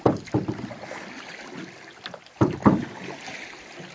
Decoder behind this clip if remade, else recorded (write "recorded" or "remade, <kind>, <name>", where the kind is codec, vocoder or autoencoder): recorded